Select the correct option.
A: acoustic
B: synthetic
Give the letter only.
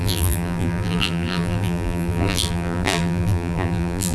B